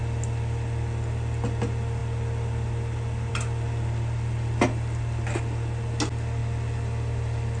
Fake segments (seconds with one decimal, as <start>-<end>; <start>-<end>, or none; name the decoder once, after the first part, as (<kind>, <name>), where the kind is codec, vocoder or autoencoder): none